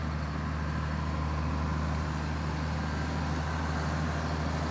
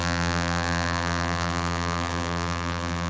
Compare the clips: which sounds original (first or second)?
first